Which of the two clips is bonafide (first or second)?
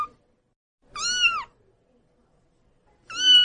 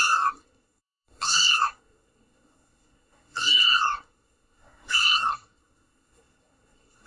first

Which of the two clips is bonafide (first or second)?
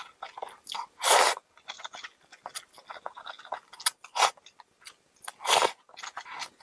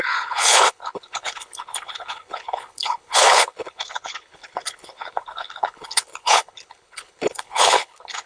first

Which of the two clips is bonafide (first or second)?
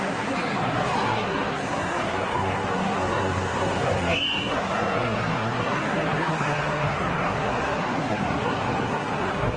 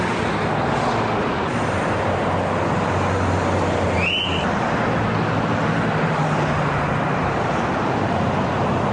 second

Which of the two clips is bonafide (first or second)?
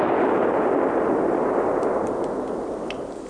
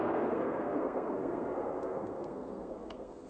first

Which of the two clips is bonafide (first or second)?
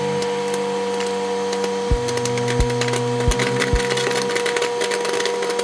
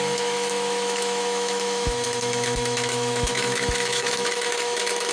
first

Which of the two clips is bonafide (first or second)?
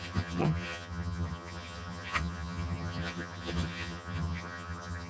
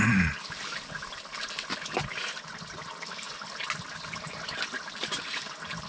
second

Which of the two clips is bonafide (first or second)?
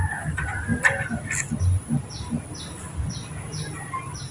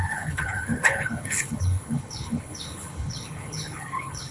first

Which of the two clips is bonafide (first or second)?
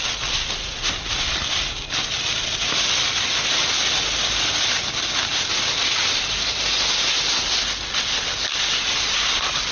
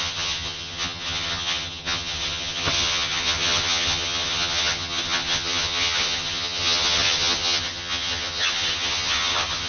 first